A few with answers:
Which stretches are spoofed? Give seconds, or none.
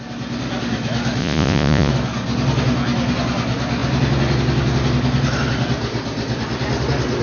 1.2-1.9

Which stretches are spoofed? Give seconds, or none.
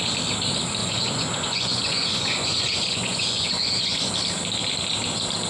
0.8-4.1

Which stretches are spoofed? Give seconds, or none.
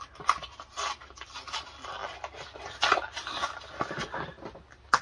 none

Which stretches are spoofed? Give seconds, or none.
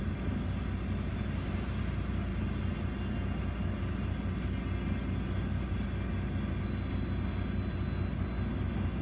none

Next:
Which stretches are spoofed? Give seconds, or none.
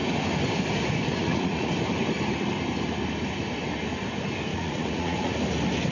1.2-1.7; 4.5-5.3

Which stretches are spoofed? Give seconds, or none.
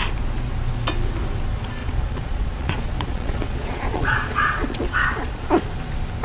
1.8-5.5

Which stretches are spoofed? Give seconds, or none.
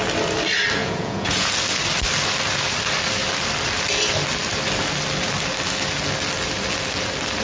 0.8-1.5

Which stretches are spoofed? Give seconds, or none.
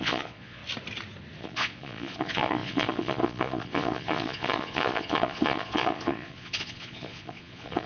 0.0-0.6; 1.4-7.9